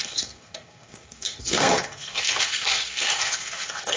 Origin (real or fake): fake